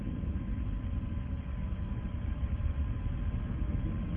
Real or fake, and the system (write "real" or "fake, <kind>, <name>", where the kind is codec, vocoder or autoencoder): real